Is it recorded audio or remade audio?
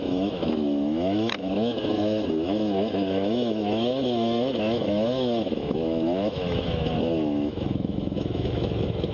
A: remade